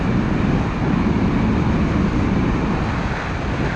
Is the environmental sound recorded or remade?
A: recorded